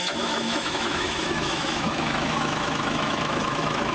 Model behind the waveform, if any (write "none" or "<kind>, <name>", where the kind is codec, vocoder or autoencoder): autoencoder, DAC-VAE